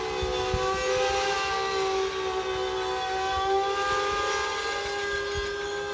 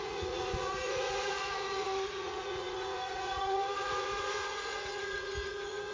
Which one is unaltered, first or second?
first